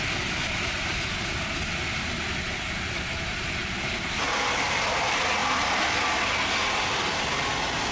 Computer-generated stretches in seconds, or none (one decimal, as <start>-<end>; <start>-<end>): none